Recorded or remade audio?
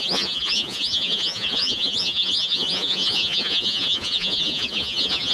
remade